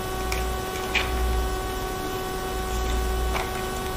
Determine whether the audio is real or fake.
real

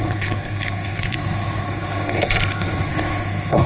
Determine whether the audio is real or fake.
fake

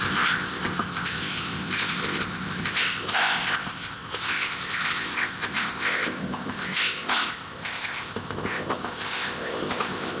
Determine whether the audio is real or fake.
fake